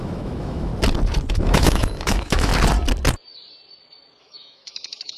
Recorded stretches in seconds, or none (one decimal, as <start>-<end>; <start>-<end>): 0.7-1.3; 2.5-4.2